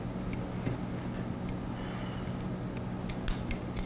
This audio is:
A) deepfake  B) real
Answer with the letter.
B